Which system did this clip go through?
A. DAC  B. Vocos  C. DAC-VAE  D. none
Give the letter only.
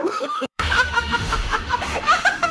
C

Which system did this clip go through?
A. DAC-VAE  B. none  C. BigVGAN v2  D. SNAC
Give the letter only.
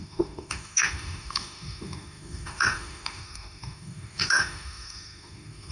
A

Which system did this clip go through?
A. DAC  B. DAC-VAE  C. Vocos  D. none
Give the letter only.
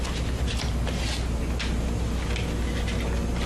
D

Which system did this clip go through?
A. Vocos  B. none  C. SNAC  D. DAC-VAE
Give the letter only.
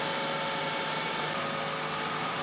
B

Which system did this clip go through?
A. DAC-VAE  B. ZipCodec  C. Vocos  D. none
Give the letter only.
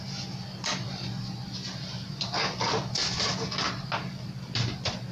D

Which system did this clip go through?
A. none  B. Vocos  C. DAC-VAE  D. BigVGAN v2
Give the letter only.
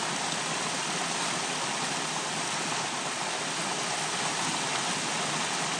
A